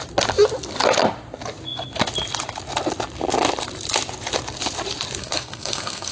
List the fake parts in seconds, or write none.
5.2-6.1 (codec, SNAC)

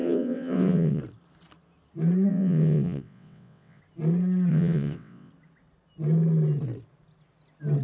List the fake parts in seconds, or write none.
0.0-1.0 (vocoder, WaveNeXt); 2.3-3.8; 4.5-5.3

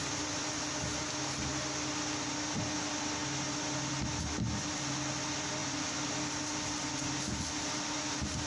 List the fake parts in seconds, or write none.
none

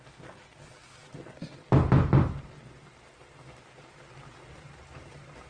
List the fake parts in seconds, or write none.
none

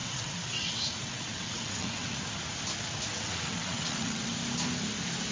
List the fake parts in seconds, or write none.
0.0-2.2 (vocoder, WaveNeXt); 3.1-4.3